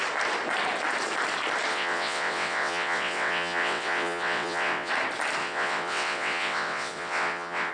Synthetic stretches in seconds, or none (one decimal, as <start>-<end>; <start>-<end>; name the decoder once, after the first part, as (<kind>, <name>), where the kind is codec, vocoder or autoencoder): 1.7-4.9 (vocoder, WaveNeXt); 5.4-7.7